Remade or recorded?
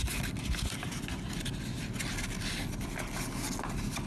recorded